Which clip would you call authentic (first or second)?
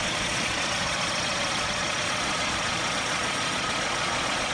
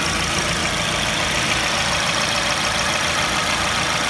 second